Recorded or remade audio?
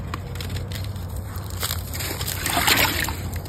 remade